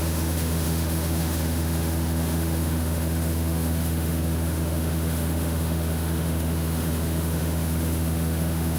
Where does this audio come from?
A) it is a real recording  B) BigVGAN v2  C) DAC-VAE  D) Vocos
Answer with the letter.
C